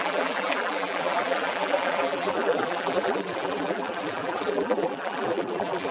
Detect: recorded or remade remade